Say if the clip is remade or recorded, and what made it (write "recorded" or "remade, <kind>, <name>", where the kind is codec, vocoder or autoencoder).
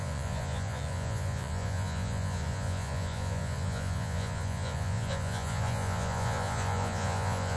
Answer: remade, vocoder, Vocos